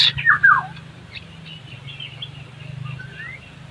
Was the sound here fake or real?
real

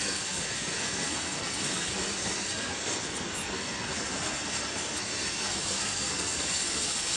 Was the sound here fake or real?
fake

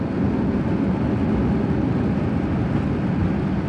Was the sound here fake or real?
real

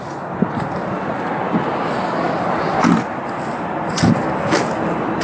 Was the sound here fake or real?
real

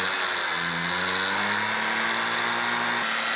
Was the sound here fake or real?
real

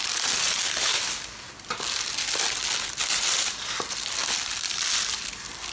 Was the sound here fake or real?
real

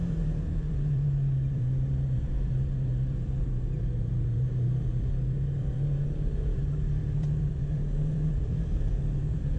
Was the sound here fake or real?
fake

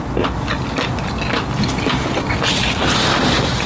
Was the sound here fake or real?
real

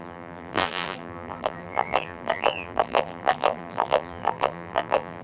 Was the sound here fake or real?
fake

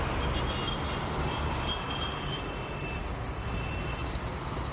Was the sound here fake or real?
real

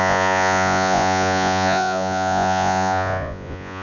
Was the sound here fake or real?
fake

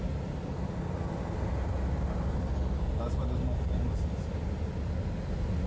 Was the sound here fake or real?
real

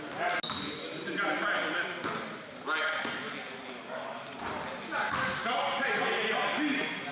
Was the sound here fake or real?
real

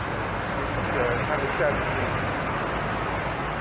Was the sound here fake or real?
real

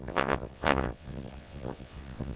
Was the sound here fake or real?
fake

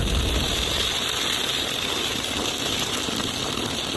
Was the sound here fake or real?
real